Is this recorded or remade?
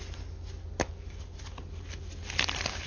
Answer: recorded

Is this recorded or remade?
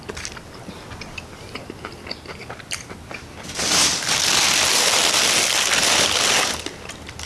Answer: recorded